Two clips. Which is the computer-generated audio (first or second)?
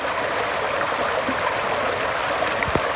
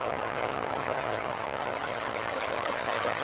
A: second